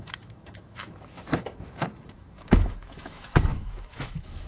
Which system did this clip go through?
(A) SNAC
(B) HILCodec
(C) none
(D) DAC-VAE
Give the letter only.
D